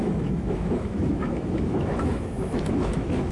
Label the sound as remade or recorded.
remade